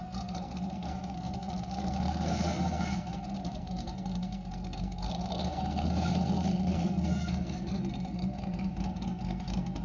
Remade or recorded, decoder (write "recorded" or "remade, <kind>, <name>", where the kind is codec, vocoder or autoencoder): remade, codec, SNAC